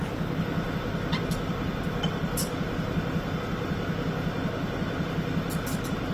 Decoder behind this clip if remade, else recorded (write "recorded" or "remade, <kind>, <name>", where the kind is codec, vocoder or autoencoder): recorded